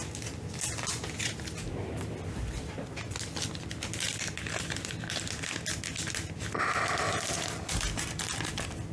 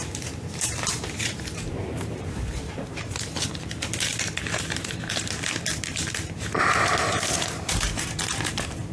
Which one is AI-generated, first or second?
second